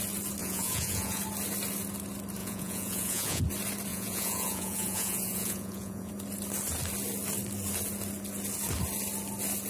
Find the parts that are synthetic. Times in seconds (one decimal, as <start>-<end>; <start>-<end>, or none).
0.4-1.2; 2.4-3.4; 3.9-6.1